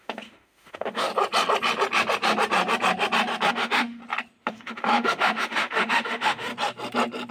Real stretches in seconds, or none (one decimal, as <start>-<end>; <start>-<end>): 1.1-3.5; 4.0-4.5; 6.5-7.3